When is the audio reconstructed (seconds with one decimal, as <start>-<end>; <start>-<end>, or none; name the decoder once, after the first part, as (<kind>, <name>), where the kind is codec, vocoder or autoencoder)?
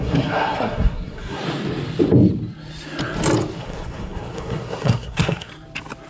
0.0-1.4 (codec, SNAC); 3.6-5.5